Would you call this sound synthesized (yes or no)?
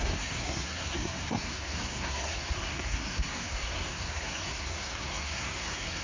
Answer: yes